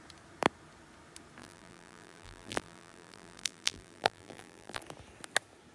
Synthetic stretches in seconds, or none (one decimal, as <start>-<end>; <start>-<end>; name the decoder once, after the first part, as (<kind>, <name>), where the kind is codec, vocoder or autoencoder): 1.4-4.8 (vocoder, BigVGAN v2)